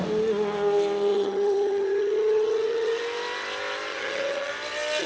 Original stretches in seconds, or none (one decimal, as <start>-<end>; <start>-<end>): 0.0-1.1; 3.0-3.9; 4.5-5.1